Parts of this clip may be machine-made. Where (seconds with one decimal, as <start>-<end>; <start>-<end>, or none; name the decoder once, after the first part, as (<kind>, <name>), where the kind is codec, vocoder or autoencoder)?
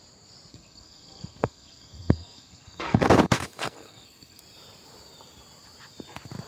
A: 0.5-4.4 (codec, SNAC)